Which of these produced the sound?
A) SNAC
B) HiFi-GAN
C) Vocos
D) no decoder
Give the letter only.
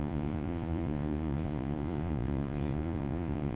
C